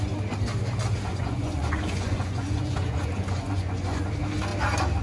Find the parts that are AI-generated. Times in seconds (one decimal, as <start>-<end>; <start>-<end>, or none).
1.1-4.1